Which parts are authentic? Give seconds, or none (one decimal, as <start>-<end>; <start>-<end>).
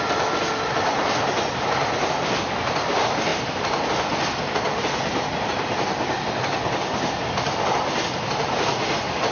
0.0-3.3; 3.8-9.3